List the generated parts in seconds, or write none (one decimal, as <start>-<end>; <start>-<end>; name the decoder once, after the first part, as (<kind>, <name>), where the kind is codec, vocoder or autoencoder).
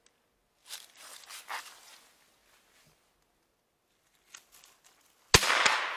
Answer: 0.6-1.3 (vocoder, BigVGAN v2)